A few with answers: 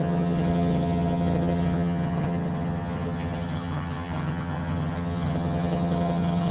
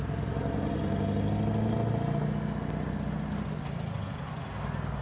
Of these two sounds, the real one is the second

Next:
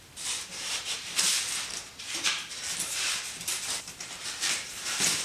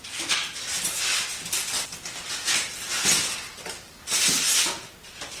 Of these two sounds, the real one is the second